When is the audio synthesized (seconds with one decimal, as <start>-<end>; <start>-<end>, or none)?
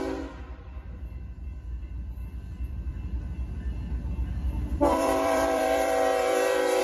0.4-3.2; 4.7-6.8